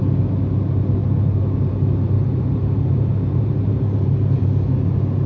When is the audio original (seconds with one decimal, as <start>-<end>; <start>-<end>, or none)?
0.0-2.2; 4.4-5.3